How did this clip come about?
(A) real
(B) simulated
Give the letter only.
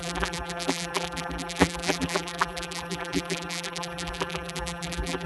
B